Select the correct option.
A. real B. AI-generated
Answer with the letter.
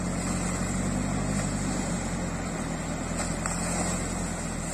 A